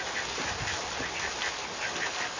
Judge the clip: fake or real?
real